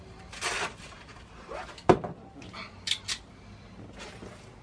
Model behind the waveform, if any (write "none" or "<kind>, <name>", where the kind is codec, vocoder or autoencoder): none